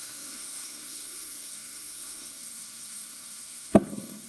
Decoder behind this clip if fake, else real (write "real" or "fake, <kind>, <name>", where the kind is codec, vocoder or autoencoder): fake, codec, SNAC